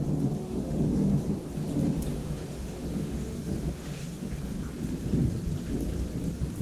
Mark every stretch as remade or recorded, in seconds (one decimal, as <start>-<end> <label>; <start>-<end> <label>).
0.0-0.4 recorded; 0.4-1.2 remade; 1.2-2.1 recorded; 2.1-4.1 remade; 4.1-6.6 recorded

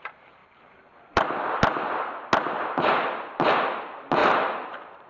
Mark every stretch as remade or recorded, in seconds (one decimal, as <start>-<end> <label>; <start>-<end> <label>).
0.0-4.2 recorded; 4.2-5.1 remade

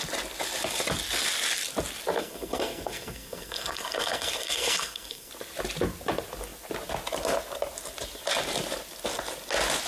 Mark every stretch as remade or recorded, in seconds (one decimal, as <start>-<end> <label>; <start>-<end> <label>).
0.0-2.2 recorded; 2.2-5.3 remade; 5.3-9.9 recorded

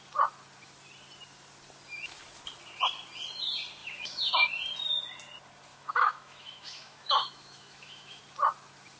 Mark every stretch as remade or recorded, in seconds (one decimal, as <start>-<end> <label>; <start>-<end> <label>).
0.0-3.8 recorded; 3.8-4.3 remade; 4.3-5.7 recorded; 5.7-8.2 remade; 8.2-9.0 recorded

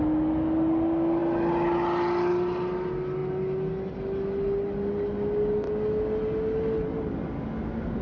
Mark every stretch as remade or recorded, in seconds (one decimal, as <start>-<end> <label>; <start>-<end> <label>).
0.0-8.0 recorded

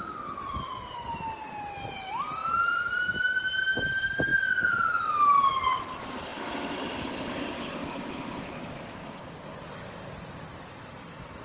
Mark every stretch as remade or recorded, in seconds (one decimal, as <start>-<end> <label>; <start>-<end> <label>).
0.0-11.4 recorded

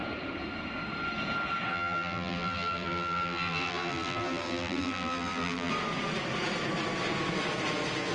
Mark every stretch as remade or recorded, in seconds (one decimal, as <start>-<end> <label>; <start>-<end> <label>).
0.0-1.7 recorded; 1.7-5.7 remade; 5.7-8.1 recorded